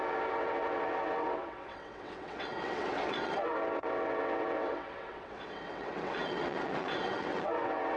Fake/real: fake